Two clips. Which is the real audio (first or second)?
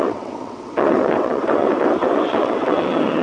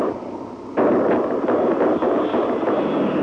second